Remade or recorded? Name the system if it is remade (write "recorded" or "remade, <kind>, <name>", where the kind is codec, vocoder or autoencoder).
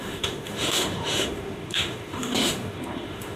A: remade, autoencoder, DAC-VAE